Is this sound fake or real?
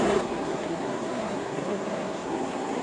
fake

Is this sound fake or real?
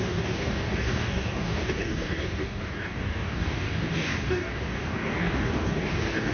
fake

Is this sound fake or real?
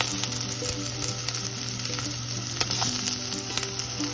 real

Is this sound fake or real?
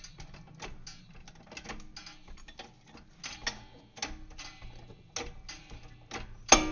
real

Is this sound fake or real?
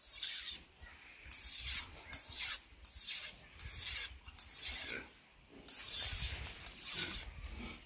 fake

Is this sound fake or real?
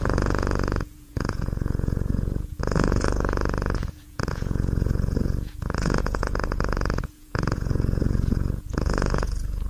fake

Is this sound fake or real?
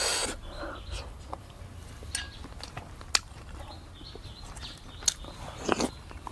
real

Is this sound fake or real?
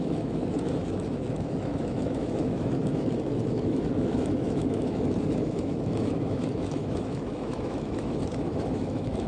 fake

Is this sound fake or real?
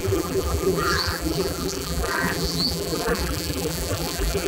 fake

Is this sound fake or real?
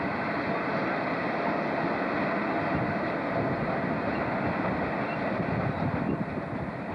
real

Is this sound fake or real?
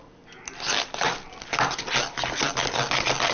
real